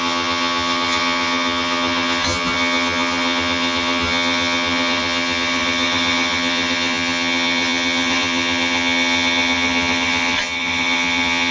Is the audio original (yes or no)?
no